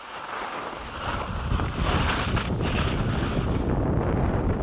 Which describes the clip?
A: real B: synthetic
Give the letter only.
A